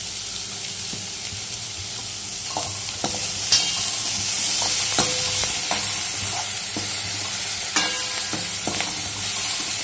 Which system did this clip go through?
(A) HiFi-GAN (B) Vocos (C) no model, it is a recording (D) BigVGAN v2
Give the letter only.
C